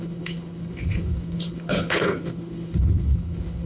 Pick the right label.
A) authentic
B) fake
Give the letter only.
B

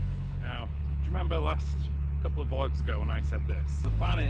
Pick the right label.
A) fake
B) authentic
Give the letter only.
A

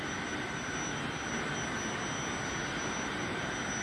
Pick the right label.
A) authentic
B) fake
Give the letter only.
A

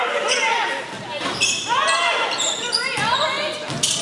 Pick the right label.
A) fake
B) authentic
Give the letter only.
B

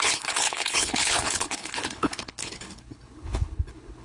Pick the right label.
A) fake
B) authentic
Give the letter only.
A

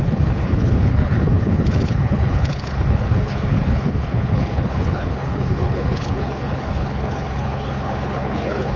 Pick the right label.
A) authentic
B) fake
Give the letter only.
B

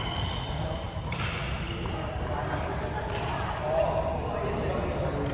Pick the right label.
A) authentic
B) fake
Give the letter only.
A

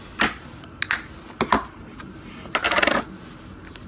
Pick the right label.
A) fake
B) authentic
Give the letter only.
B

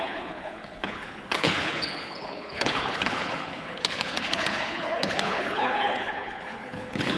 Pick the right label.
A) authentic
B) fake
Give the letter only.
B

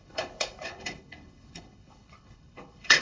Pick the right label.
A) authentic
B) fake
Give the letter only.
B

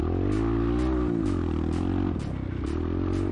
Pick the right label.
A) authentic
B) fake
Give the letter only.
A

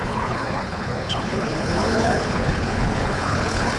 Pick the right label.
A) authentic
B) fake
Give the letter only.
B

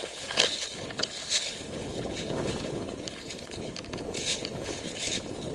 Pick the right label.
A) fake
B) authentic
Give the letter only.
A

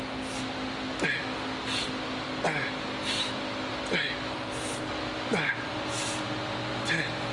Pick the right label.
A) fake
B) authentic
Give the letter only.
B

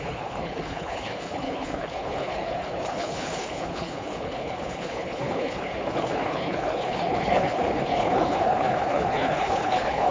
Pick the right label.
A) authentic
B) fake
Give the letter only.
B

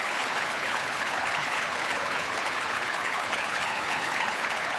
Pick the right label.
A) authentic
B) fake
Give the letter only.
B